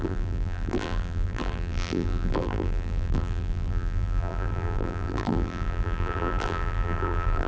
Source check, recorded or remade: remade